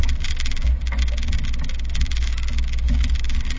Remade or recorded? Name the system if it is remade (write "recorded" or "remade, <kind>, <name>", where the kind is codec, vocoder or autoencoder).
recorded